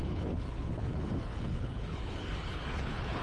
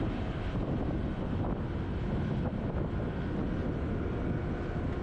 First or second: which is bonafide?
second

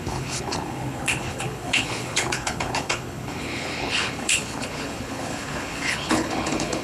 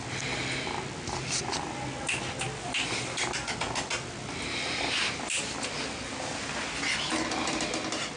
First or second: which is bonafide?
second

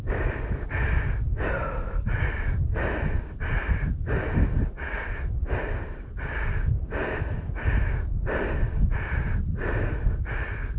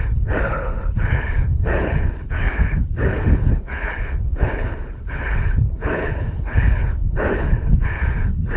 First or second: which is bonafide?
first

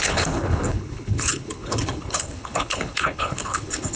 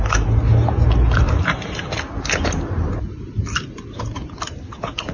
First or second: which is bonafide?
second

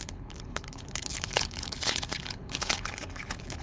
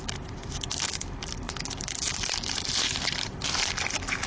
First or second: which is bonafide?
second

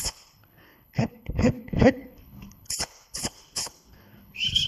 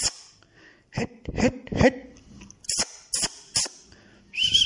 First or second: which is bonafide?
second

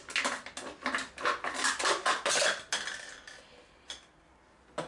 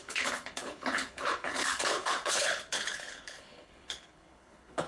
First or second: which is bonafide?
first